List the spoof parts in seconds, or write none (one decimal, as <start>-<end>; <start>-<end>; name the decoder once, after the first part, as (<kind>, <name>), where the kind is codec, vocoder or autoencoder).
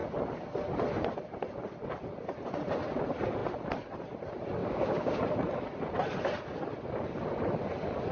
4.6-5.2 (codec, DAC)